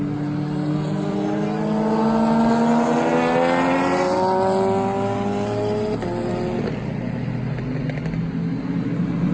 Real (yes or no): yes